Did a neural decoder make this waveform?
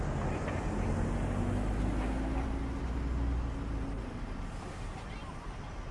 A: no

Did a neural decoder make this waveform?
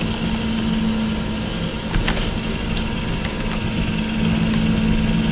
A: no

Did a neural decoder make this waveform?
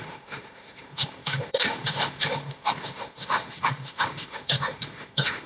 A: yes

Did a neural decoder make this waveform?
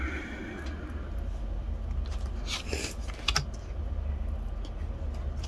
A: no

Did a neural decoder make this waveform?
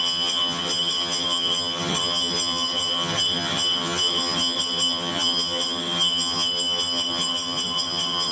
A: yes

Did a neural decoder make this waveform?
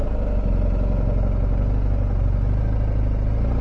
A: no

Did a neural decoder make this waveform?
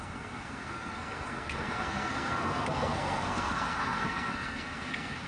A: yes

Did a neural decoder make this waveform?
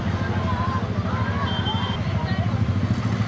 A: no